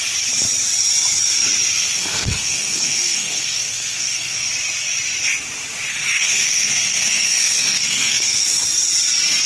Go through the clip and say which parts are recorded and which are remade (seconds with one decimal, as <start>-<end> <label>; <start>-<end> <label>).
0.0-1.7 recorded; 1.7-4.5 remade; 4.5-5.9 recorded; 5.9-8.4 remade; 8.4-9.5 recorded